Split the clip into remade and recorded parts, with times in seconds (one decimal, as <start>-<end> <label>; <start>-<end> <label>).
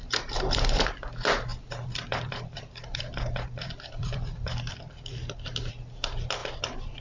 0.0-0.8 remade; 0.8-1.5 recorded; 1.5-5.7 remade; 5.7-6.4 recorded; 6.4-7.0 remade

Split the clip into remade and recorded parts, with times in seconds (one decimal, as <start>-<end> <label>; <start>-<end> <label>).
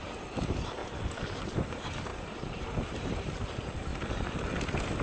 0.0-0.8 remade; 0.8-1.4 recorded; 1.4-3.9 remade; 3.9-5.0 recorded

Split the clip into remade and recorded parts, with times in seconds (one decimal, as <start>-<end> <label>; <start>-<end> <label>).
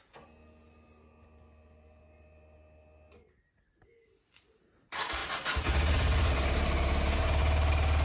0.0-8.0 recorded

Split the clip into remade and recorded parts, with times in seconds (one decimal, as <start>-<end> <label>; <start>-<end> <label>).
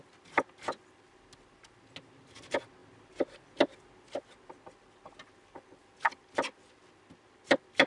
0.0-7.9 recorded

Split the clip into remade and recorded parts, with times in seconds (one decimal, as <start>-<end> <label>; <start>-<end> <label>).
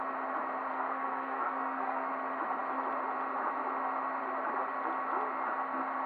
0.0-0.7 recorded; 0.7-2.1 remade; 2.1-6.1 recorded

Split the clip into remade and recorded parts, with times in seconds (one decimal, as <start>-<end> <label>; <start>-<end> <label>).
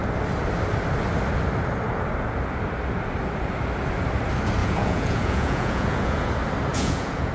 0.0-4.6 recorded; 4.6-6.3 remade; 6.3-6.7 recorded; 6.7-7.3 remade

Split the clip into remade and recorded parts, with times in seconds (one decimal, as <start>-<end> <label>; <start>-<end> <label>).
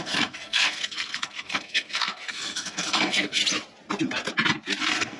0.0-3.4 remade; 3.4-4.8 recorded; 4.8-5.2 remade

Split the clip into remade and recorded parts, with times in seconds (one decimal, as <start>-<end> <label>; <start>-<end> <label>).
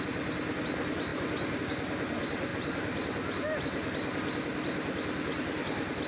0.0-6.1 recorded